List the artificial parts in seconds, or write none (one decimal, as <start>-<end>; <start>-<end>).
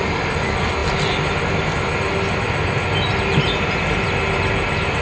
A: none